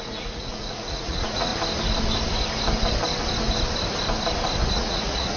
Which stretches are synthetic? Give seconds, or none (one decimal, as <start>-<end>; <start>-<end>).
0.0-1.5; 4.7-5.4